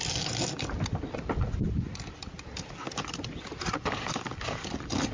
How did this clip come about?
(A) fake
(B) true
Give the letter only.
B